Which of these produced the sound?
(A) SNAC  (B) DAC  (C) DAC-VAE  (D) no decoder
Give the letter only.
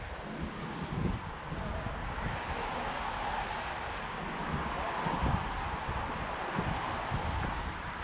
D